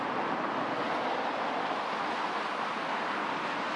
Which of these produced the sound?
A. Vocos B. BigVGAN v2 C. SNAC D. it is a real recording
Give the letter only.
D